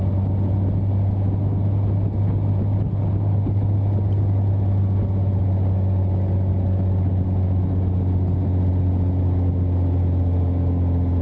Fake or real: real